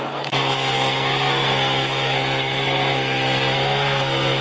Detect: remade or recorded remade